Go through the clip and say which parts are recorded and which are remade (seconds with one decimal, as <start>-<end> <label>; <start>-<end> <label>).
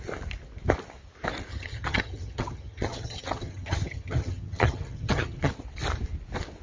0.0-1.5 recorded; 1.5-5.5 remade; 5.5-6.6 recorded